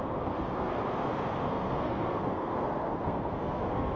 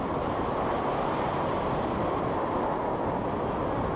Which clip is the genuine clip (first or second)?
second